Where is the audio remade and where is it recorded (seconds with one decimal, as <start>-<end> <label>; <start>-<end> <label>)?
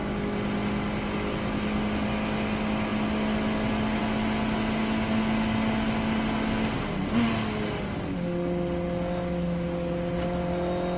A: 0.0-11.0 recorded